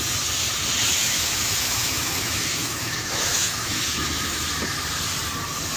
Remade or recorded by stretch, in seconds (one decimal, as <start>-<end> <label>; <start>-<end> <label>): 0.0-0.9 recorded; 0.9-4.4 remade; 4.4-5.8 recorded